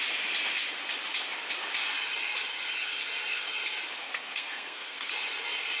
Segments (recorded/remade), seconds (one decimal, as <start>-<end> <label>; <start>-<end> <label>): 0.0-4.0 recorded; 4.0-5.1 remade; 5.1-5.8 recorded

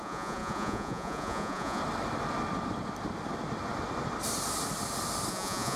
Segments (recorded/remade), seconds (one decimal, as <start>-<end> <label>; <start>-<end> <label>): 0.0-1.8 remade; 1.8-5.3 recorded; 5.3-5.8 remade